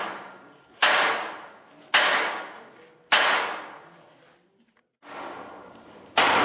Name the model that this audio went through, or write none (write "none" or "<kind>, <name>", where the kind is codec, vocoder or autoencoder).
none